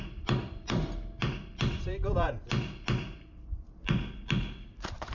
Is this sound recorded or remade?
remade